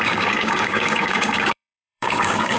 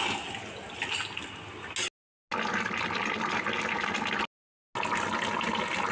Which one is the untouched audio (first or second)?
second